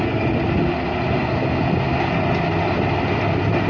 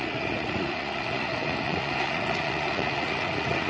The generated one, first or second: second